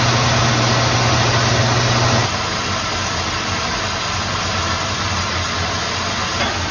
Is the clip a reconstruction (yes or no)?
no